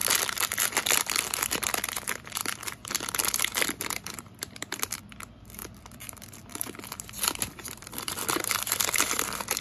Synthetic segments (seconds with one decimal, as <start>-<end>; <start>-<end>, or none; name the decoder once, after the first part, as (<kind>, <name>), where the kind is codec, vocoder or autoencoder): 0.0-1.5 (vocoder, BigVGAN v2); 5.6-9.6